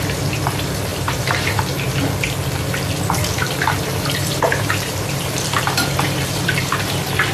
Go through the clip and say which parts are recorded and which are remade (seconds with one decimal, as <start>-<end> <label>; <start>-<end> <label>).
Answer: 0.0-0.9 recorded; 0.9-1.6 remade; 1.6-3.9 recorded; 3.9-6.7 remade; 6.7-7.3 recorded